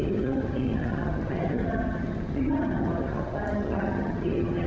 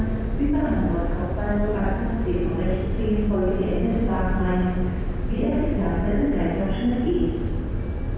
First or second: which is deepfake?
first